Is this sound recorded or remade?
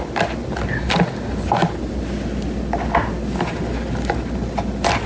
recorded